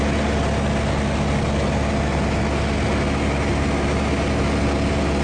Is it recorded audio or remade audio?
recorded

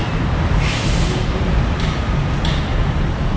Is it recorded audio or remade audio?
remade